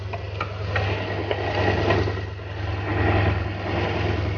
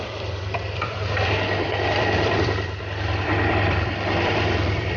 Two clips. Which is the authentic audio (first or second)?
first